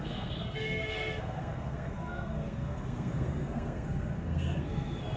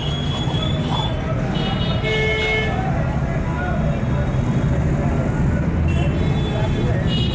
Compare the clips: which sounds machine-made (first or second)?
first